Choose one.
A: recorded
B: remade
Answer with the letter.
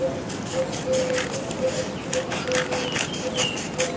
A